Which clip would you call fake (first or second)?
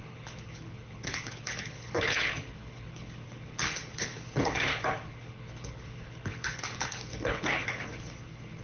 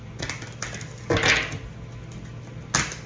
first